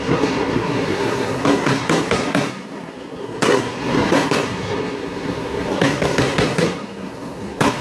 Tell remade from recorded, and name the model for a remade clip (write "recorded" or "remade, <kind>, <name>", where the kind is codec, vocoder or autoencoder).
remade, codec, SNAC